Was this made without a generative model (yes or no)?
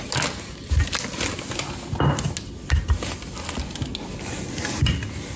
yes